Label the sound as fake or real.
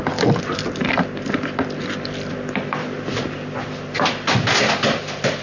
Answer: real